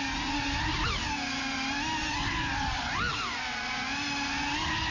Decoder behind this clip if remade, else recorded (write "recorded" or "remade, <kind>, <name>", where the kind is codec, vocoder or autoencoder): recorded